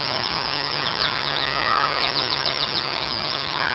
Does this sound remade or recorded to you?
remade